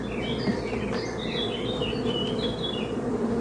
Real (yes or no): no